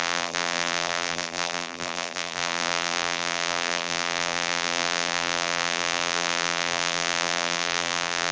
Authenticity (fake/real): fake